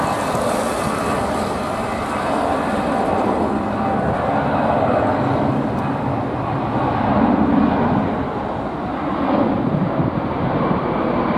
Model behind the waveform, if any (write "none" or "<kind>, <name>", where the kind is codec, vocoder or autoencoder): none